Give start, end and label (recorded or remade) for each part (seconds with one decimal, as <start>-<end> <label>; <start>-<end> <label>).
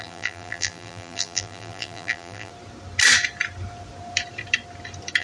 0.0-2.5 remade; 2.5-5.2 recorded